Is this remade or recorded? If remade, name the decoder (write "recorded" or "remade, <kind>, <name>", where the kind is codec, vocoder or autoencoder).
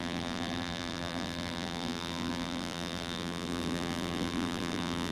remade, vocoder, BigVGAN v2